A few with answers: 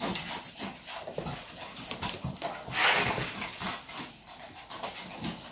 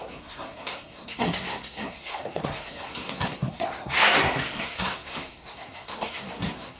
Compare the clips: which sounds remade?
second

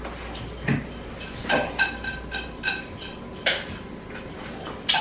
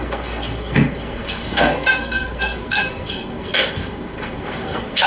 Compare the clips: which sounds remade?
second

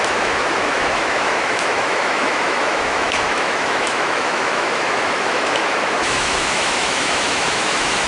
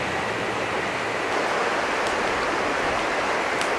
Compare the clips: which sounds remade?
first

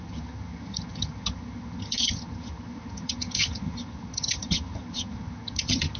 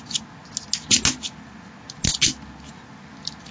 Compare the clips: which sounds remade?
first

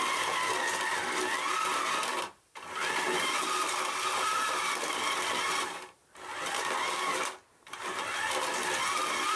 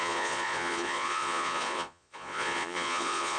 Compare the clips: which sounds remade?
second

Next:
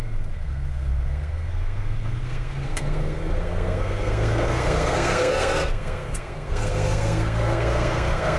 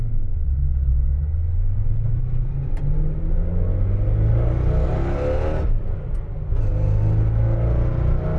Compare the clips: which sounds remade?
first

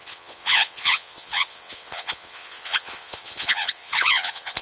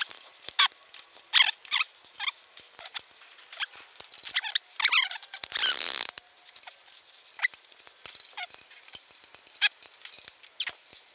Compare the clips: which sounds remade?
first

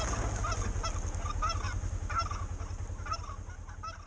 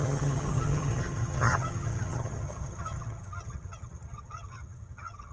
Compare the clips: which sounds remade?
second